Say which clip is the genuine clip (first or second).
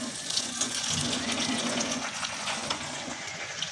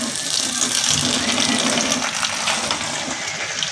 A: second